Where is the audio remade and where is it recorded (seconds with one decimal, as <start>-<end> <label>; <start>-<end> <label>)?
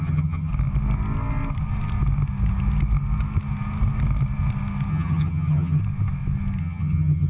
0.0-0.5 remade; 0.5-4.9 recorded; 4.9-5.8 remade; 5.8-6.6 recorded; 6.6-7.3 remade